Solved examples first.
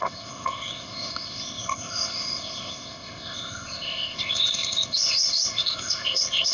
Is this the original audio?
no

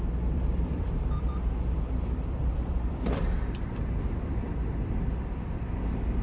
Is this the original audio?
no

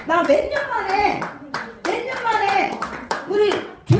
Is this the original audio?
no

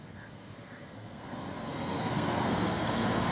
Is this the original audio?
no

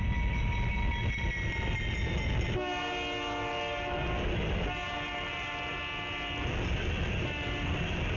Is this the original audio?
yes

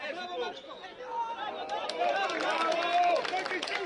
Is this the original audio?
yes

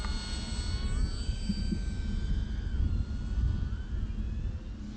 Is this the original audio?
yes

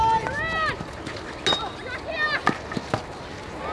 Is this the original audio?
yes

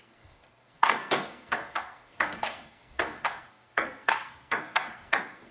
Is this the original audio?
no